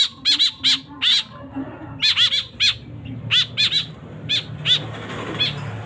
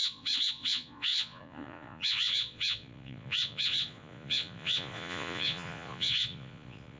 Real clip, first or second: first